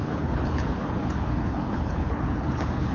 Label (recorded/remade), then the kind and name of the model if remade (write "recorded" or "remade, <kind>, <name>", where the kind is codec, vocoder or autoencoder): remade, codec, HILCodec